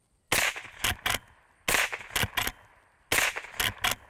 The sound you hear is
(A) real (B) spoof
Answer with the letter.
A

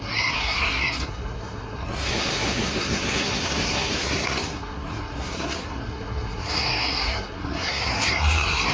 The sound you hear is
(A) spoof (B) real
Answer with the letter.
A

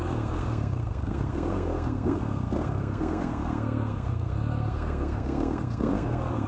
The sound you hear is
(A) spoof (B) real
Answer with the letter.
A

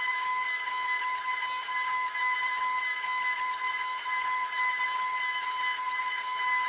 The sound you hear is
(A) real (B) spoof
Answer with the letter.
A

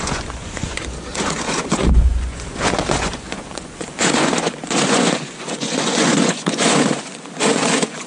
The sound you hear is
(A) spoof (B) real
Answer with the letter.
A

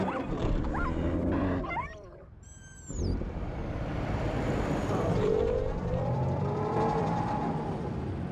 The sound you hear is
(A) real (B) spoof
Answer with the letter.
B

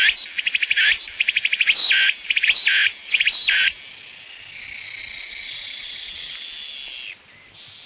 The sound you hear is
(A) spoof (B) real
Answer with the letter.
B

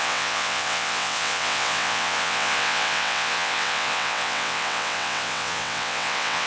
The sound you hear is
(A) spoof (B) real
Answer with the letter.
A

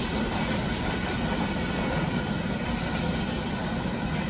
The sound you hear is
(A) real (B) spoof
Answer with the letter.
A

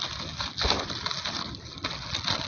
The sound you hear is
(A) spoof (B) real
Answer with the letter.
B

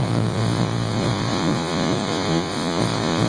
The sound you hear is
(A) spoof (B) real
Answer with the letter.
A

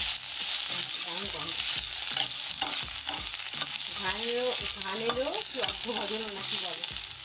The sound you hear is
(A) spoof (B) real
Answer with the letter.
B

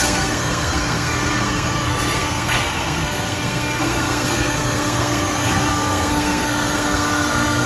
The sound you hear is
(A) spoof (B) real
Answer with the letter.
A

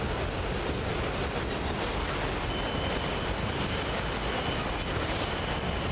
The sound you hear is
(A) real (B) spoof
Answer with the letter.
A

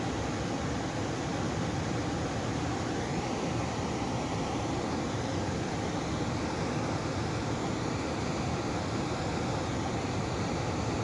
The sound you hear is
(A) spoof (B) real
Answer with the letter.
B